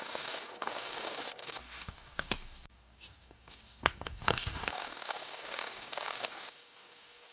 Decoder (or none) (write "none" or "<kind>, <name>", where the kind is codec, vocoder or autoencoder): codec, DAC